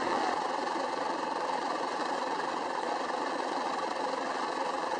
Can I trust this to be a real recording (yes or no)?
no